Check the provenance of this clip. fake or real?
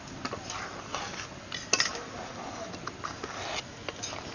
real